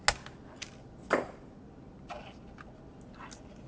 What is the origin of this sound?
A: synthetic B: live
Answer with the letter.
B